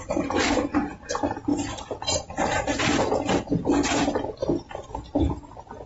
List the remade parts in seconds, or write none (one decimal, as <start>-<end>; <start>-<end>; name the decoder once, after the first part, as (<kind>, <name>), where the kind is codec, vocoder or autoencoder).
1.5-3.3 (vocoder, BigVGAN v2); 4.4-5.1